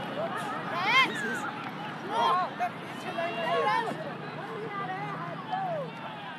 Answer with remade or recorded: recorded